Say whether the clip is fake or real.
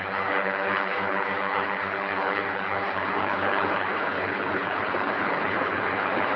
fake